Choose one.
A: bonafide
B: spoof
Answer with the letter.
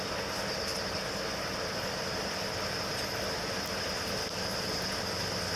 A